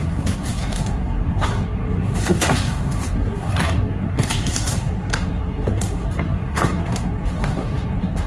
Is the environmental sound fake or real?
fake